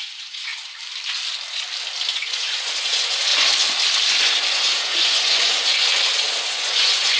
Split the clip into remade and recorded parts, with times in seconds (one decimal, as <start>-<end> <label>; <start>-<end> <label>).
0.0-0.5 remade; 0.5-2.1 recorded; 2.1-3.3 remade; 3.3-4.1 recorded; 4.1-5.9 remade; 5.9-6.4 recorded; 6.4-7.2 remade